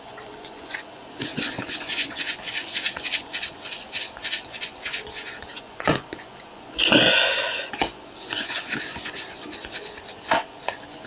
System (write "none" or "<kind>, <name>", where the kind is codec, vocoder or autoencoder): vocoder, Vocos